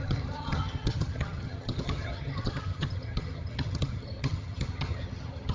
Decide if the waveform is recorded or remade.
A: remade